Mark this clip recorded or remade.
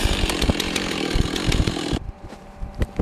remade